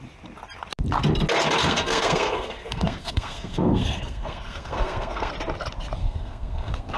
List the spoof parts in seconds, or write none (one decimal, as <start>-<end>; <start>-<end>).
1.6-5.3; 6.0-7.0